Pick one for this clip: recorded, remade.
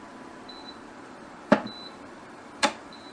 remade